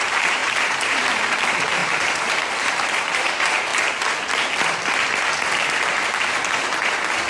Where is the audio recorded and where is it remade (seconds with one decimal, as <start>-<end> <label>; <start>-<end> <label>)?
0.0-3.7 remade; 3.7-7.3 recorded